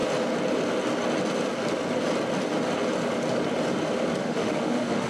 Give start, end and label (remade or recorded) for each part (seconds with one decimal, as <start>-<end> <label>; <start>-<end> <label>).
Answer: 0.0-4.2 recorded; 4.2-5.1 remade